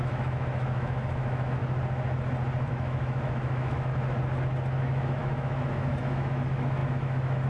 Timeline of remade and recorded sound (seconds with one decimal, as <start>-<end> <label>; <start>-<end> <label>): 0.0-1.6 remade; 1.6-2.7 recorded; 2.7-3.9 remade; 3.9-4.8 recorded; 4.8-7.5 remade